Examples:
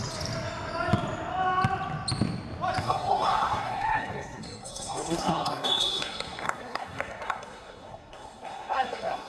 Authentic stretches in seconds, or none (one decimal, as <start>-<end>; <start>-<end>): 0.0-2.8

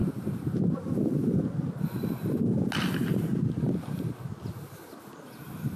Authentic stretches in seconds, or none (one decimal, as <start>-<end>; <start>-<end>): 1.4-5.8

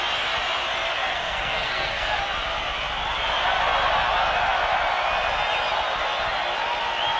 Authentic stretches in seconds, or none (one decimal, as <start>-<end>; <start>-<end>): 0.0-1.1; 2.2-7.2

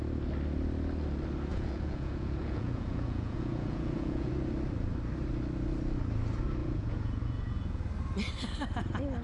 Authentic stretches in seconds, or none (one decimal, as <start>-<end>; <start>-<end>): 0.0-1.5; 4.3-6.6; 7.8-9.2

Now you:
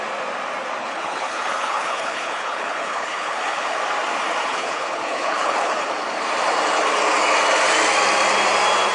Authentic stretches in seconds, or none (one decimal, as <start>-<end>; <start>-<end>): 0.0-0.8; 3.8-4.4; 5.9-8.9